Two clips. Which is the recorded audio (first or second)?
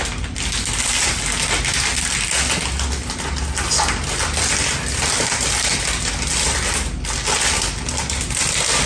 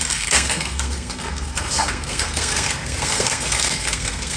first